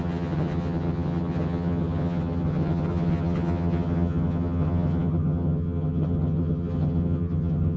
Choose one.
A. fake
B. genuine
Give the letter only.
A